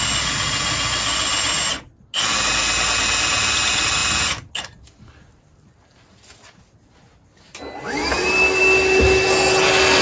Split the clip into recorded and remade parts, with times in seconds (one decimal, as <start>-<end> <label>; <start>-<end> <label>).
0.0-10.0 recorded